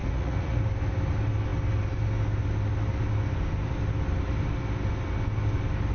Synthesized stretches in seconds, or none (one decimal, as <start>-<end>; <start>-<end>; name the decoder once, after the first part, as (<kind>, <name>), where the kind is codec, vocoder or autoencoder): 0.0-0.6 (vocoder, Vocos)